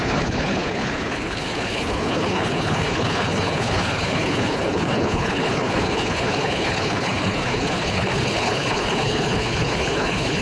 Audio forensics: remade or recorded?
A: remade